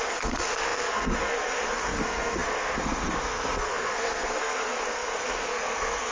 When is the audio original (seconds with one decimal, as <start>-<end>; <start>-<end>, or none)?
none